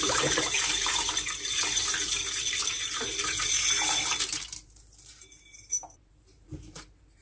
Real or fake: fake